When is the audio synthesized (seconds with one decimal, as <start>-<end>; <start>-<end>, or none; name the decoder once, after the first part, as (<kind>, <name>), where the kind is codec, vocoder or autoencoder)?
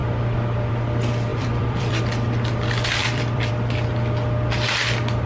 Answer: 1.3-2.0 (vocoder, BigVGAN v2); 3.0-3.5